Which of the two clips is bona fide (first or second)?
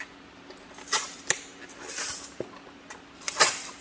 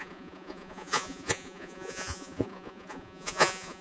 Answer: first